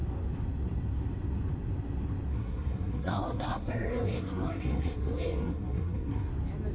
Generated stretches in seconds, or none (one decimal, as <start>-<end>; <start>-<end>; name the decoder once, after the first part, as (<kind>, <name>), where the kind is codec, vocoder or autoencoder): 2.3-6.3 (codec, SNAC)